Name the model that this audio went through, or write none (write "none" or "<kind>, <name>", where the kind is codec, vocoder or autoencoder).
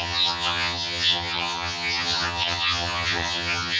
vocoder, HiFi-GAN